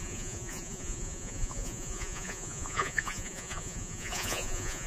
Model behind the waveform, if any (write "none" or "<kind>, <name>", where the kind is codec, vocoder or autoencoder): vocoder, Vocos